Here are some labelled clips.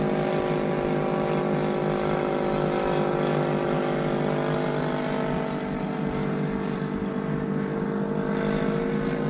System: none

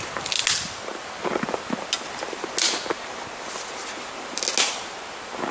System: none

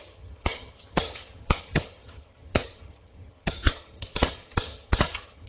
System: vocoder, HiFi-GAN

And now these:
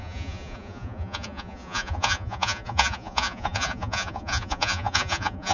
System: vocoder, Vocos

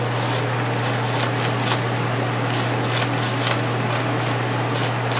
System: none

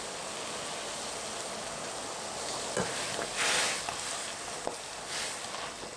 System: none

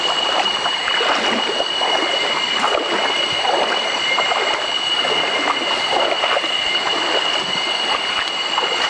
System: none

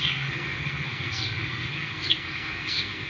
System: codec, SNAC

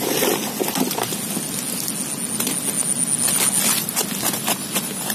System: none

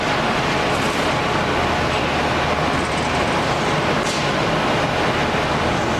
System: none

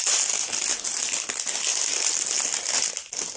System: none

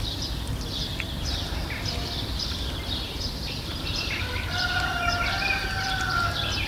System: vocoder, BigVGAN v2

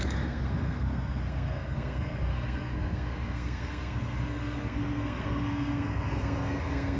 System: codec, SNAC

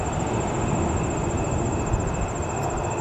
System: none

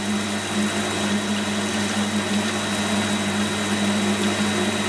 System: none